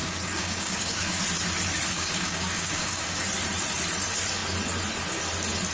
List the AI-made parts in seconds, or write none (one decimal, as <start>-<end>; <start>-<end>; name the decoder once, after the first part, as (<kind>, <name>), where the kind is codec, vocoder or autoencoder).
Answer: 0.0-1.0 (codec, DAC); 1.9-3.2